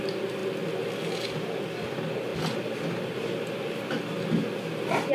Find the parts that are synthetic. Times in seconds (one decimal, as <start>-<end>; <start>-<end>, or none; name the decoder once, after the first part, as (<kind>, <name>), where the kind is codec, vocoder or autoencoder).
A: none